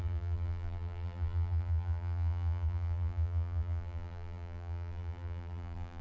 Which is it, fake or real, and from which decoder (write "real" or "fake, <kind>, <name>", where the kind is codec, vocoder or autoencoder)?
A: fake, vocoder, BigVGAN v2